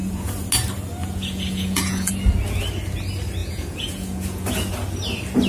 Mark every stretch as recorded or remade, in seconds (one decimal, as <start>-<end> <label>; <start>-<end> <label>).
0.0-0.5 remade; 0.5-1.0 recorded; 1.0-2.1 remade; 2.1-3.4 recorded; 3.4-4.5 remade; 4.5-5.5 recorded